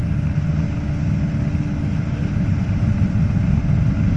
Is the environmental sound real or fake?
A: real